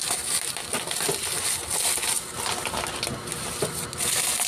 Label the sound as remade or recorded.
recorded